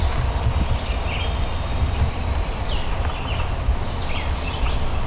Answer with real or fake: real